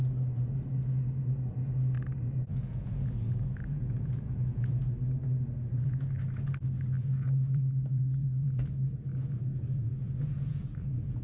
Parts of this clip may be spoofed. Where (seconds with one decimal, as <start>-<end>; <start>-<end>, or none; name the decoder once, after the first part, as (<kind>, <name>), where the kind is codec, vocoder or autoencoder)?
2.5-4.7 (vocoder, Vocos); 7.0-7.7; 8.2-11.2